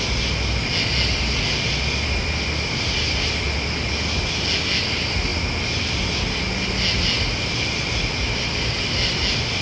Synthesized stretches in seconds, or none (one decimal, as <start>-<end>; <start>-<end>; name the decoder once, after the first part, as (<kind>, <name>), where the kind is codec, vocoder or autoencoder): none

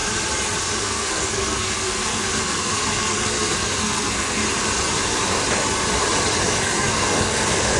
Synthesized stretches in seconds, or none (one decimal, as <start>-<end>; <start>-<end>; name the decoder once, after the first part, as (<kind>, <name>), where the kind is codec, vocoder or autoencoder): 0.8-4.4 (codec, SNAC); 6.6-7.8

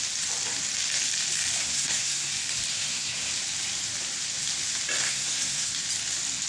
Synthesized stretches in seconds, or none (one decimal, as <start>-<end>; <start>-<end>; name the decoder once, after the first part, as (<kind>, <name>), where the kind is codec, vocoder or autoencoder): 1.6-2.3 (codec, SNAC); 2.7-3.3; 5.0-5.7